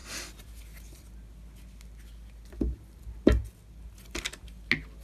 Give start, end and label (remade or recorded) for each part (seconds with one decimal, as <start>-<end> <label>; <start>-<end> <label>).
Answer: 0.0-5.0 recorded